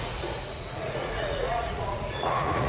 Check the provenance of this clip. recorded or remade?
remade